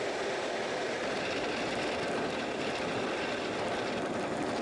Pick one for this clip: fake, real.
real